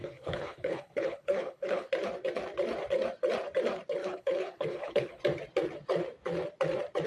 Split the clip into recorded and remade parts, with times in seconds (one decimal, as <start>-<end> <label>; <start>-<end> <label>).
0.0-1.9 remade; 1.9-4.0 recorded; 4.0-5.2 remade; 5.2-7.1 recorded